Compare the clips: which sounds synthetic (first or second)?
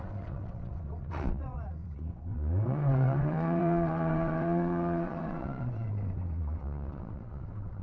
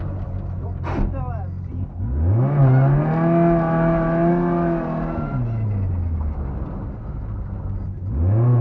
first